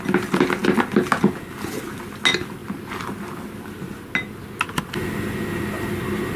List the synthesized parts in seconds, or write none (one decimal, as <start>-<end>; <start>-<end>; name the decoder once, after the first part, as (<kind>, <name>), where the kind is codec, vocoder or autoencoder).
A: none